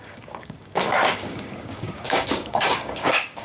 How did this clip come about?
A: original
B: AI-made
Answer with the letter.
B